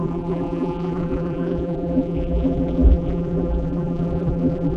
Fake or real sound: fake